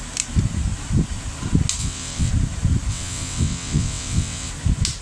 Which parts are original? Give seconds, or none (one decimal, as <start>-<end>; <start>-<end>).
0.0-1.8; 2.3-2.9; 4.5-5.0